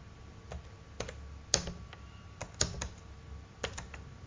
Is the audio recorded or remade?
recorded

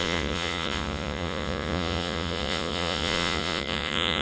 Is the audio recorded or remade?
remade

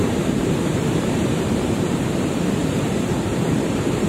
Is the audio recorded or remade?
remade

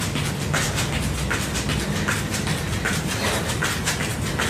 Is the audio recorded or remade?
recorded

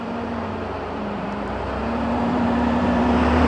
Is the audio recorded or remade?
remade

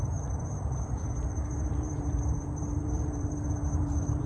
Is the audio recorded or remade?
remade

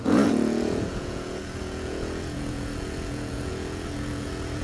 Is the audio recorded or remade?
remade